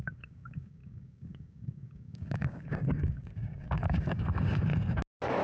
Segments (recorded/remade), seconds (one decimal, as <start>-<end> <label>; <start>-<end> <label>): 0.0-4.7 remade; 4.7-5.4 recorded